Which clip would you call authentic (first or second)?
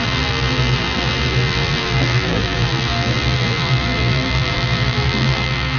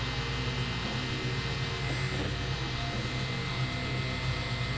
second